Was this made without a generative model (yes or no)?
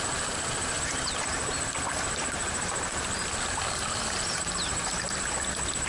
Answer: yes